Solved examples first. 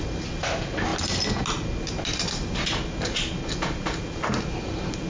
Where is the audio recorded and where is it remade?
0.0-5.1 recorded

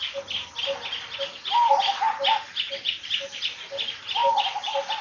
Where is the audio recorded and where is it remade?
0.0-5.0 recorded